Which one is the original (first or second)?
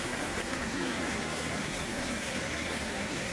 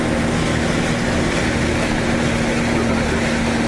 second